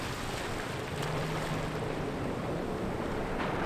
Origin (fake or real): real